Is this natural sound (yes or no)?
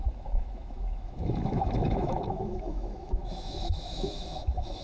no